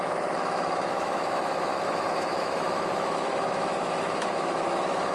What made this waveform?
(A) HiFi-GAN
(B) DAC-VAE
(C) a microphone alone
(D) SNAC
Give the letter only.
B